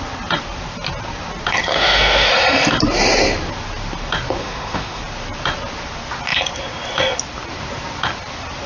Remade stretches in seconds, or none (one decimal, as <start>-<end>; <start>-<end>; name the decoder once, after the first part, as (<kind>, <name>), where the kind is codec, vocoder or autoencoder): 1.7-2.3 (autoencoder, DAC-VAE); 4.4-5.0